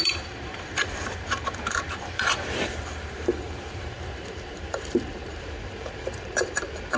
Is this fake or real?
fake